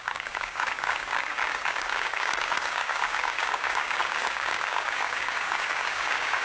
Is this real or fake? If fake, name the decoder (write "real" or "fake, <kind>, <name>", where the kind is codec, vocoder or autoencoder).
fake, codec, DAC